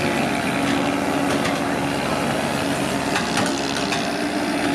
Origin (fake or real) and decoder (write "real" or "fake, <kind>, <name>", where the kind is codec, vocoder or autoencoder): real